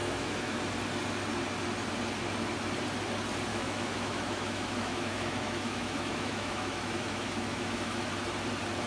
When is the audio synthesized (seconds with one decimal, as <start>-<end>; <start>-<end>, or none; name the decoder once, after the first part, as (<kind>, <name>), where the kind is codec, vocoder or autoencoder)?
0.0-0.6 (autoencoder, DAC-VAE); 3.5-8.1